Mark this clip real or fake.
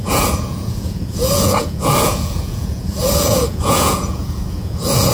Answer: fake